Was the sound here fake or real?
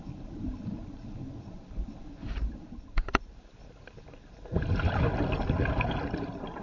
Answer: real